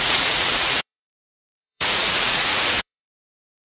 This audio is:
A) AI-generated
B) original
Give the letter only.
A